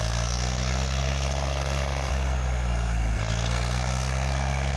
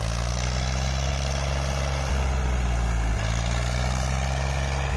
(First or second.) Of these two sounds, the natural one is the second